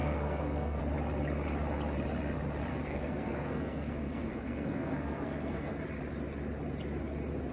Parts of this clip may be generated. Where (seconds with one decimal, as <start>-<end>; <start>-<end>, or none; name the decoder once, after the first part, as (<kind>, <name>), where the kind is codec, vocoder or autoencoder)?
0.0-0.8 (codec, SNAC); 2.7-5.8